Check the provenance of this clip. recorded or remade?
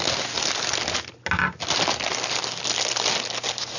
recorded